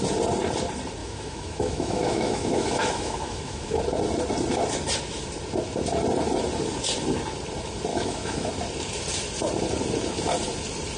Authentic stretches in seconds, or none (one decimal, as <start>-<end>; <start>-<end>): 0.0-1.0; 3.8-7.9; 8.5-11.0

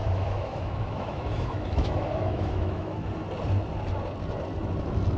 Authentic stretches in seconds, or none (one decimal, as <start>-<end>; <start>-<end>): 3.1-5.2